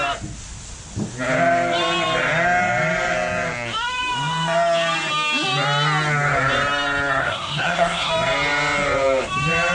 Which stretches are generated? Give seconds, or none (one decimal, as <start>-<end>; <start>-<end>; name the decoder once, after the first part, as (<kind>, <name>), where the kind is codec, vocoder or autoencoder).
7.2-8.1 (codec, SNAC)

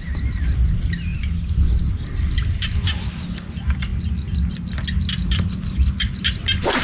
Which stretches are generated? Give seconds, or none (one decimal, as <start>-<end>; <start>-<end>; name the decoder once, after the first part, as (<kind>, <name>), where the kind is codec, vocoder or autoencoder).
none

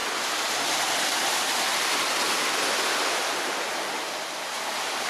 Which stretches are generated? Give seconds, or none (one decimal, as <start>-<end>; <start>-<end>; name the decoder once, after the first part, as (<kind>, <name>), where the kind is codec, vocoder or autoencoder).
none

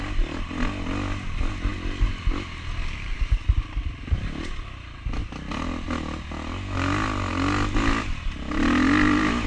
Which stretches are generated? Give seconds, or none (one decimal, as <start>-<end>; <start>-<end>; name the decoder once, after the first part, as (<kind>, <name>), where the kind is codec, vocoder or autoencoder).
none

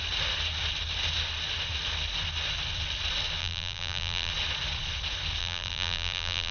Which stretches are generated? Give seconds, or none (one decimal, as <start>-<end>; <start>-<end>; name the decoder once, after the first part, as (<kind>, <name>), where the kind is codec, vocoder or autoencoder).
3.4-4.3 (vocoder, BigVGAN v2); 5.4-6.5

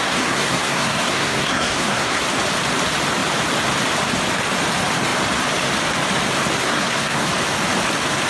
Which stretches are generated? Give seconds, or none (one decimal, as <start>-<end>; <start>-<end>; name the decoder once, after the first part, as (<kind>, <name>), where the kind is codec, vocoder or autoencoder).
0.0-2.2 (codec, SNAC); 6.6-7.3